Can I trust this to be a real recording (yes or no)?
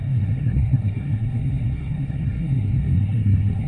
no